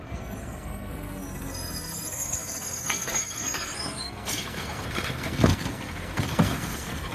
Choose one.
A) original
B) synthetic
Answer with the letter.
B